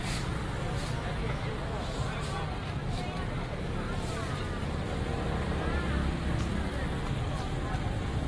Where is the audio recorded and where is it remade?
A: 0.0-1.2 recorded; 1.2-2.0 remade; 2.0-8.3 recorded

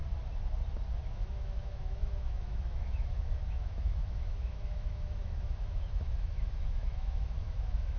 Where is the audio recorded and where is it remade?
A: 0.0-1.0 recorded; 1.0-8.0 remade

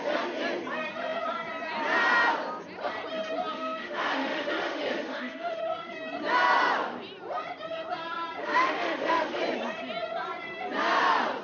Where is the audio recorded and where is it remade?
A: 0.0-3.5 recorded; 3.5-5.6 remade; 5.6-8.4 recorded; 8.4-9.4 remade; 9.4-11.4 recorded

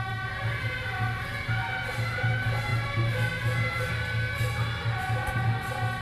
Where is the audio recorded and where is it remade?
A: 0.0-6.0 recorded

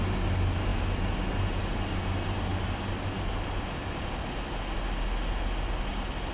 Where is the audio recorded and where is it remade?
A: 0.0-6.3 recorded